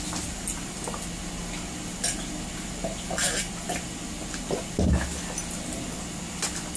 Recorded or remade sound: recorded